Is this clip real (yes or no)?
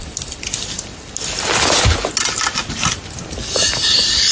yes